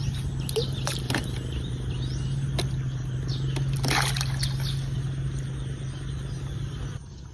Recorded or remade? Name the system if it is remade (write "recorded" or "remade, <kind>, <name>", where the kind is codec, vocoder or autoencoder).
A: recorded